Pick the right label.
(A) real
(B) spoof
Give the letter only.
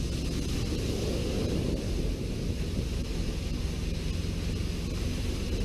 A